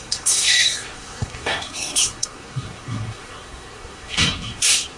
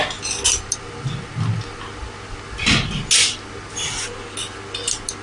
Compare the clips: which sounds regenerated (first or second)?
first